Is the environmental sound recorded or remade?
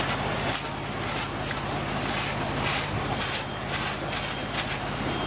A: recorded